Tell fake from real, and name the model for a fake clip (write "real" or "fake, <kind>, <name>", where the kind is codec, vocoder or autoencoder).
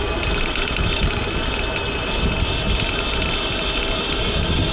real